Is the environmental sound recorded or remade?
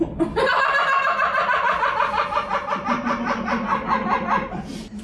recorded